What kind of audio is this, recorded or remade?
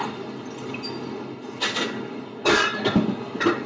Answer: recorded